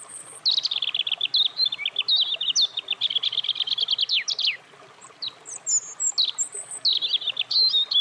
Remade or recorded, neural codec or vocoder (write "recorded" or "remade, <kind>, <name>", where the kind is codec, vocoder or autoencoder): recorded